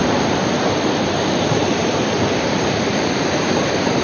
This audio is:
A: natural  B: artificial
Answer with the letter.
B